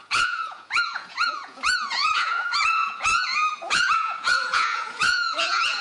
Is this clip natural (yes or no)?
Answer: no